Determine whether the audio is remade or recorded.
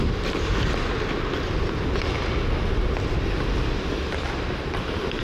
recorded